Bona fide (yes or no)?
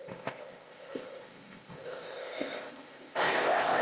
no